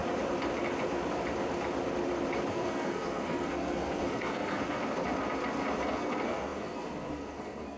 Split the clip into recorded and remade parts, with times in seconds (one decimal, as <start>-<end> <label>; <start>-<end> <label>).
0.0-2.5 recorded; 2.5-4.8 remade; 4.8-5.9 recorded; 5.9-7.8 remade